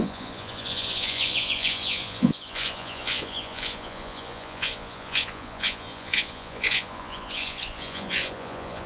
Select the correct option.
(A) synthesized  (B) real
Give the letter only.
A